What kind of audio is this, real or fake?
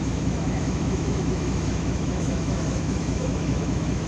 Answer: fake